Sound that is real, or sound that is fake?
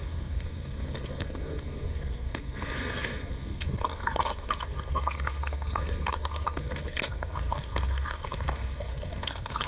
fake